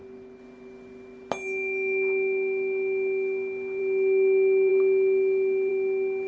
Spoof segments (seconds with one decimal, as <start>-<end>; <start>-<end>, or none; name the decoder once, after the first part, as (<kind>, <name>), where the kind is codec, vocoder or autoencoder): none